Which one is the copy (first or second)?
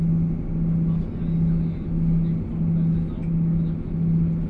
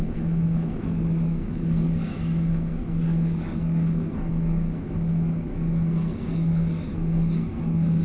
second